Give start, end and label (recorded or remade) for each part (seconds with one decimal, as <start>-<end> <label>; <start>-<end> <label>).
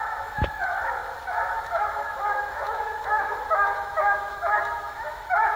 0.0-5.6 remade